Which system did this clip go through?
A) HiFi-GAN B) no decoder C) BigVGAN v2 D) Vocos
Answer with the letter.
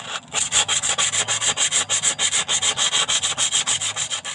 B